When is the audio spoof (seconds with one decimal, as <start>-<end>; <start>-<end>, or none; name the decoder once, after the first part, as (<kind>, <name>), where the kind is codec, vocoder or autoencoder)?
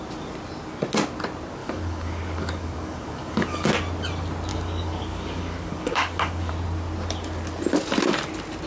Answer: 1.6-3.7 (codec, DAC); 4.5-6.5